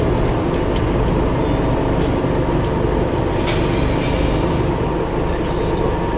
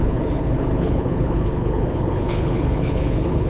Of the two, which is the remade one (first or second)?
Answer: second